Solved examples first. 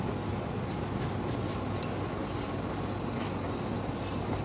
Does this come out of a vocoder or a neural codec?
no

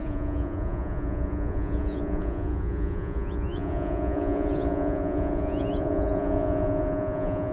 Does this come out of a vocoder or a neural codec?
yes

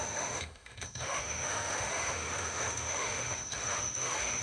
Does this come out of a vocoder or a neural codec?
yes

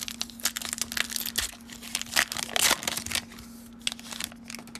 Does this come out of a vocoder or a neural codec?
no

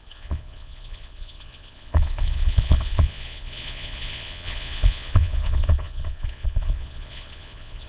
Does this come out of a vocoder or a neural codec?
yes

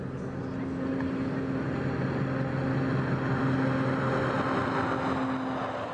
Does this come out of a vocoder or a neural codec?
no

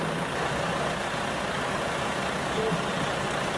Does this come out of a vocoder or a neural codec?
no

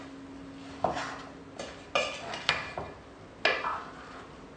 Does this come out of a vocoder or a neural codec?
no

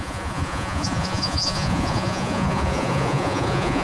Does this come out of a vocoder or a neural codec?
yes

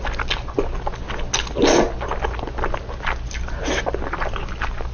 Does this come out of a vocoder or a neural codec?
no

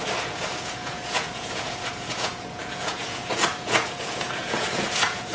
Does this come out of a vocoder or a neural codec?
yes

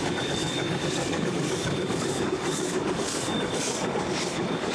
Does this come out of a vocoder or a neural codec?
yes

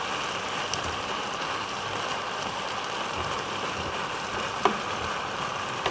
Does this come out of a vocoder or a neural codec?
no